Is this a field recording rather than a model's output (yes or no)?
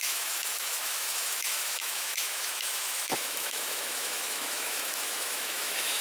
no